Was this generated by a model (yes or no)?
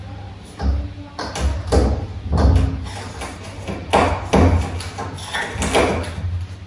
no